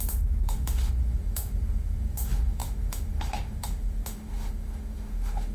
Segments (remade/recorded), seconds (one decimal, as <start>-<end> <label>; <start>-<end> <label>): 0.0-5.5 remade